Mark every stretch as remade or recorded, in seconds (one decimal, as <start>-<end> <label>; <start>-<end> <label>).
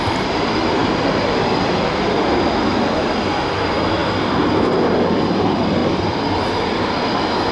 0.0-5.8 recorded; 5.8-7.1 remade; 7.1-7.5 recorded